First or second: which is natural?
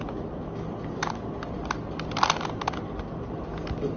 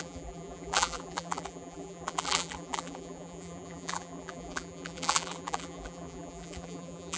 first